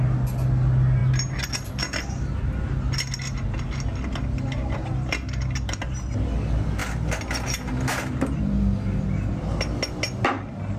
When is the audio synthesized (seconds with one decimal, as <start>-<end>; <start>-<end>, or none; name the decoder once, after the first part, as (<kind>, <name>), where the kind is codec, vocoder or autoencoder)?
none